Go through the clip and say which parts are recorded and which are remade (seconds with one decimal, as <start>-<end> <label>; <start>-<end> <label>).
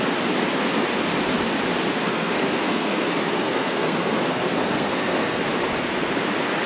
0.0-2.0 recorded; 2.0-5.4 remade; 5.4-6.7 recorded